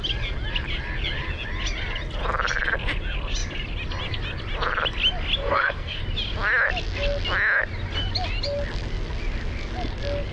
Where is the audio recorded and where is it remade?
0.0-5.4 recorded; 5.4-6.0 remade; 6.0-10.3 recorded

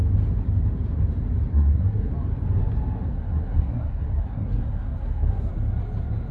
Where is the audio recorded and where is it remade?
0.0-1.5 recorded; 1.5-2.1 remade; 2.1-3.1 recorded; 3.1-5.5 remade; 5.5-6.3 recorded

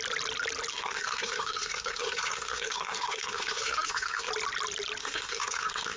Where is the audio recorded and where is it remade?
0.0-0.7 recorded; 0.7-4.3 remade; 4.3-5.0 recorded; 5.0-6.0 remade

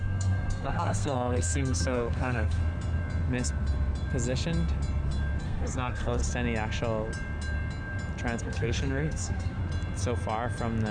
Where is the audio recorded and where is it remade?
0.0-2.6 remade; 2.6-5.4 recorded; 5.4-6.2 remade; 6.2-8.4 recorded; 8.4-9.6 remade; 9.6-10.9 recorded

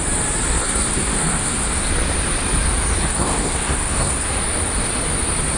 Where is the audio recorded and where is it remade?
0.0-0.6 recorded; 0.6-1.9 remade; 1.9-3.0 recorded; 3.0-4.3 remade; 4.3-5.6 recorded

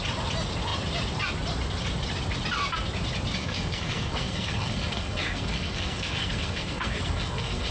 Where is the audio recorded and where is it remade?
0.0-3.4 recorded; 3.4-7.7 remade